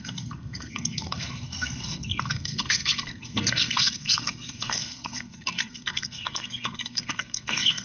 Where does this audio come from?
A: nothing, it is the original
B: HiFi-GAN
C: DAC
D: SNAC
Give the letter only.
D